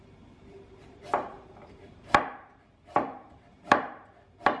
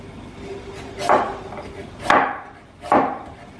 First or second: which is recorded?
second